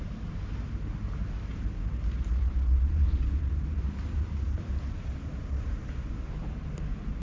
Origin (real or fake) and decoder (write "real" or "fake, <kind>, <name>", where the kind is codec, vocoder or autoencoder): real